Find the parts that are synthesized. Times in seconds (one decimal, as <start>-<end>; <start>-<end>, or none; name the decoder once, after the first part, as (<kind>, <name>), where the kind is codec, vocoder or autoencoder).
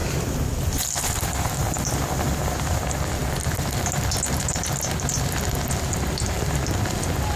0.0-2.9 (vocoder, BigVGAN v2)